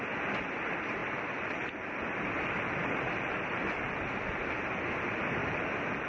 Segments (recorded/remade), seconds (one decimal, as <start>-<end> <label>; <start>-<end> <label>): 0.0-1.0 recorded; 1.0-4.7 remade; 4.7-5.4 recorded; 5.4-6.1 remade